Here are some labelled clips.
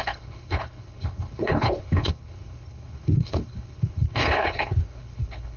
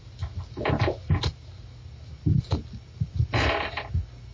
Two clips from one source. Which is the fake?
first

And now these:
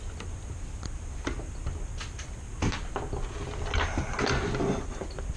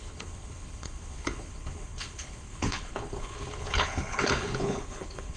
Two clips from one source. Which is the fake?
second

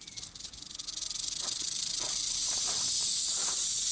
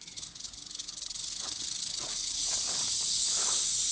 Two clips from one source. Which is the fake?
second